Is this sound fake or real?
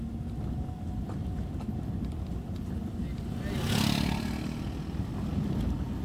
real